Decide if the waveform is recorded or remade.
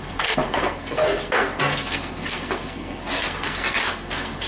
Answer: remade